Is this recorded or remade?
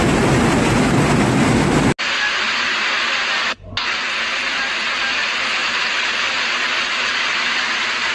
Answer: recorded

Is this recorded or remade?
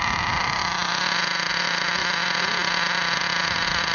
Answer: recorded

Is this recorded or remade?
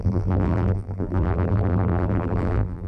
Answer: remade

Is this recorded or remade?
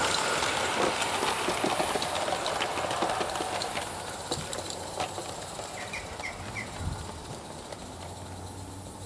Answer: recorded